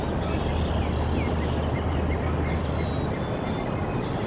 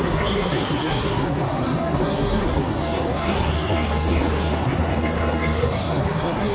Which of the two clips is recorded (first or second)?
first